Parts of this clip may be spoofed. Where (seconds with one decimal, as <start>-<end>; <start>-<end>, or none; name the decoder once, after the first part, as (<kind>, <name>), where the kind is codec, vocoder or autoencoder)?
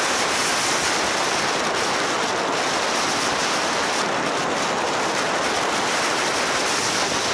none